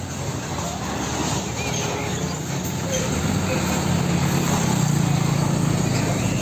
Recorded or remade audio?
recorded